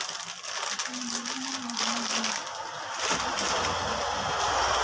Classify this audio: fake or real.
real